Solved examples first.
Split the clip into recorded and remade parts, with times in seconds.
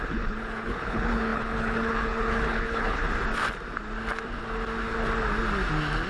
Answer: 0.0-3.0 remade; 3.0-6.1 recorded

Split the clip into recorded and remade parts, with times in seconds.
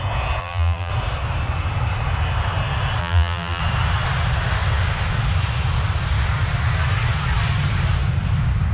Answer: 0.0-0.4 recorded; 0.4-0.9 remade; 0.9-3.0 recorded; 3.0-3.6 remade; 3.6-8.7 recorded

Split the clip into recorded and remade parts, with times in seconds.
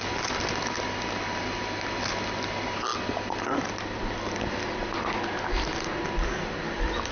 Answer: 0.0-7.1 recorded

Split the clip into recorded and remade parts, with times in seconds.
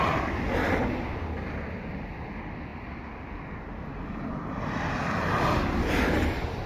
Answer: 0.0-6.7 recorded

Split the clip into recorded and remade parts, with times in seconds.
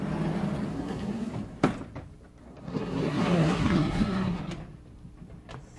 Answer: 0.0-0.7 recorded; 0.7-1.3 remade; 1.3-2.4 recorded; 2.4-4.4 remade; 4.4-5.8 recorded